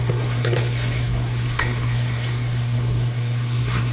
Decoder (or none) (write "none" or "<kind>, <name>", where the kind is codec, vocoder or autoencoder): codec, SNAC